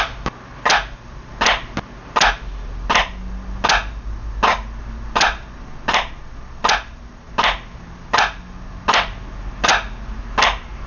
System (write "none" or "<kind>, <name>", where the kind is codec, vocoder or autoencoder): none